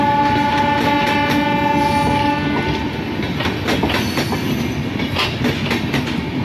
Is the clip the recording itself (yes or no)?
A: yes